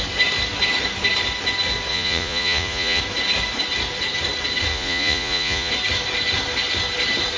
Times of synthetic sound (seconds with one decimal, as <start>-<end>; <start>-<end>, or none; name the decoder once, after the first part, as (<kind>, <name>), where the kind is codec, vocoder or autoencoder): 1.9-3.0 (vocoder, Vocos); 4.7-5.7